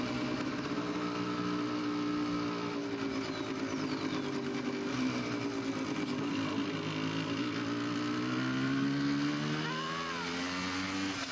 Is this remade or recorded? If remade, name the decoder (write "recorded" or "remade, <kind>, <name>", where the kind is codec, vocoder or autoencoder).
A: recorded